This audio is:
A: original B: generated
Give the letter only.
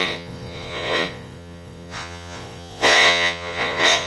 B